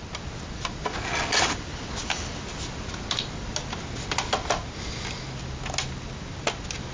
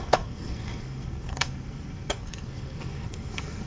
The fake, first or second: second